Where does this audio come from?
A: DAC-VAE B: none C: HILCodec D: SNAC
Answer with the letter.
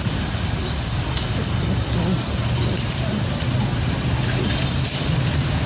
B